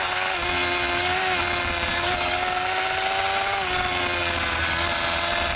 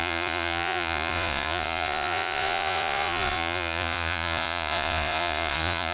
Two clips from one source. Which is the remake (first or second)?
second